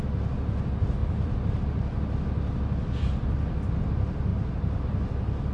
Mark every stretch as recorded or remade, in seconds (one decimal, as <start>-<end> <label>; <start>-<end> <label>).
0.0-1.0 recorded; 1.0-1.6 remade; 1.6-4.3 recorded; 4.3-4.8 remade; 4.8-5.5 recorded